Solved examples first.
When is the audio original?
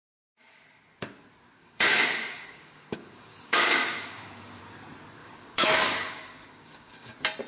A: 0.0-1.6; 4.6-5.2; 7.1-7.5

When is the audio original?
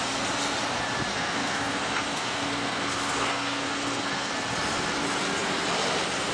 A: 0.0-1.1; 4.3-6.3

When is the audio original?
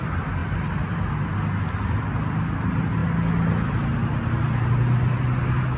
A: 0.0-5.8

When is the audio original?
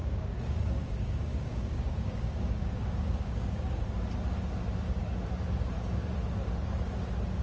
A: 3.8-7.4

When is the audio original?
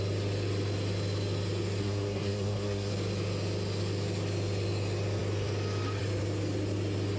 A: 0.0-1.8; 2.9-7.2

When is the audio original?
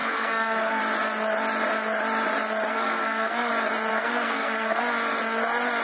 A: 0.8-2.7; 3.5-3.9; 4.8-5.8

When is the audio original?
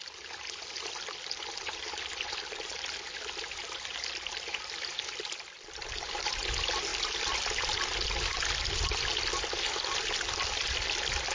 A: 0.0-11.3